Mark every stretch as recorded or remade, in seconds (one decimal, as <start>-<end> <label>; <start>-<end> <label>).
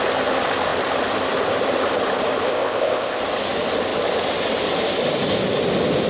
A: 0.0-2.5 recorded; 2.5-3.2 remade; 3.2-6.1 recorded